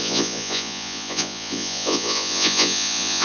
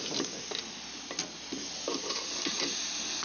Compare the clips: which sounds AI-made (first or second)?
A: first